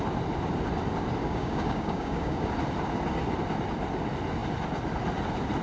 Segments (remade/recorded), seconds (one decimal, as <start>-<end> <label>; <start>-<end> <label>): 0.0-1.2 recorded; 1.2-2.5 remade; 2.5-5.6 recorded